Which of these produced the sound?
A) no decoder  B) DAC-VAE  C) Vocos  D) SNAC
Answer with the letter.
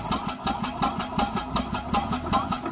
A